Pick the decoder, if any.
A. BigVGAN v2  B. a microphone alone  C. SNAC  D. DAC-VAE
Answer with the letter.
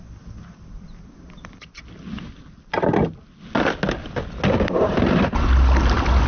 B